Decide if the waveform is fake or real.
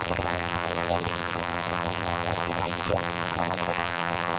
fake